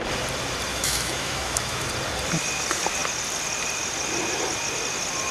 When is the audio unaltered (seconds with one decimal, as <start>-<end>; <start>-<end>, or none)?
0.0-0.7; 1.9-5.3